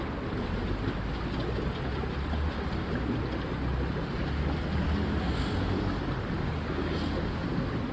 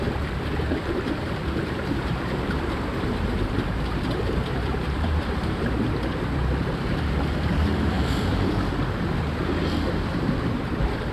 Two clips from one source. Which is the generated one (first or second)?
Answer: second